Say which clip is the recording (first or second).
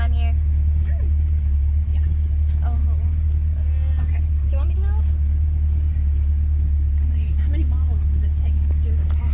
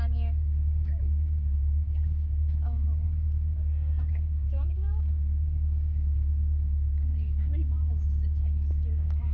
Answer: first